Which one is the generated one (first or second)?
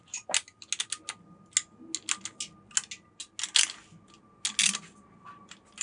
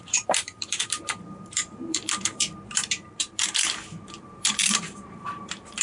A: second